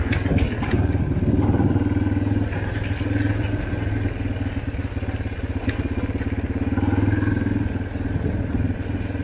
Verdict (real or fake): real